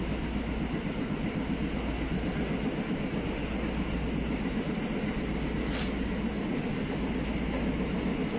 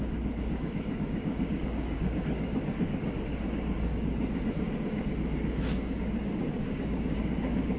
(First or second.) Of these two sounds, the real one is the first